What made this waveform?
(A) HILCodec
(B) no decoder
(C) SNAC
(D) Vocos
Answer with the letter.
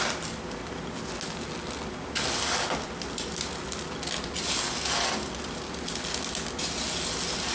B